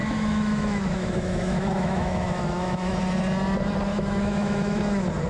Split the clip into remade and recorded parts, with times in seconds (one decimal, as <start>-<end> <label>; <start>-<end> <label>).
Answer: 0.0-3.0 remade; 3.0-3.9 recorded; 3.9-4.8 remade; 4.8-5.3 recorded